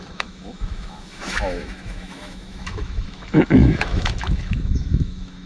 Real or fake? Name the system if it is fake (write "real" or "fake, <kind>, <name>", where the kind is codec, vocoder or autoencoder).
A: fake, autoencoder, DAC-VAE